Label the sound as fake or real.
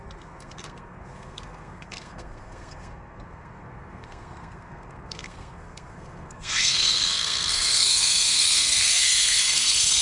fake